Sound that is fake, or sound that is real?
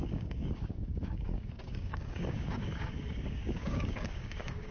fake